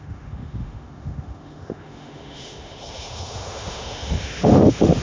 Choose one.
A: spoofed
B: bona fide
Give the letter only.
A